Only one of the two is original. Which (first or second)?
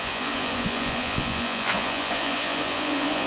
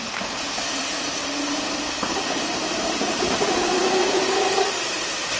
second